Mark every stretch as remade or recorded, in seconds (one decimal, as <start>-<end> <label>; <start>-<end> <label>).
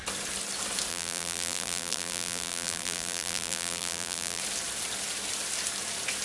0.0-0.9 recorded; 0.9-4.4 remade; 4.4-6.2 recorded